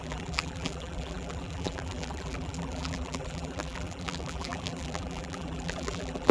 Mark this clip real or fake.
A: fake